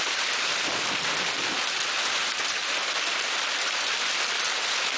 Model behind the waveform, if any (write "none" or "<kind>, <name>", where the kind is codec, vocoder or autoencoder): none